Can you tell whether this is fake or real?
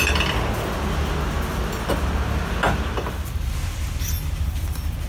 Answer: real